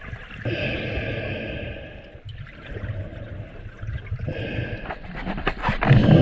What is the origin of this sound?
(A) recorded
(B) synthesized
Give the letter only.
A